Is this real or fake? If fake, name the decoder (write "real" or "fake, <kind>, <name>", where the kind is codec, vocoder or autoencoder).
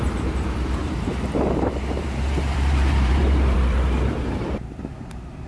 fake, vocoder, BigVGAN v2